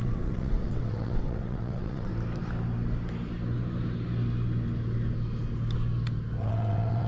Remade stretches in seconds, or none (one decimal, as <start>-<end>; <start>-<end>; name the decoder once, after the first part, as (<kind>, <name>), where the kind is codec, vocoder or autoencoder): 0.0-2.1 (vocoder, WaveNeXt); 6.4-7.1